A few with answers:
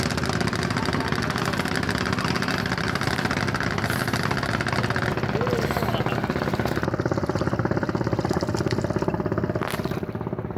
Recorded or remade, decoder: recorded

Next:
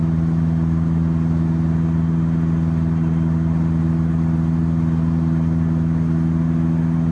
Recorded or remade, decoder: recorded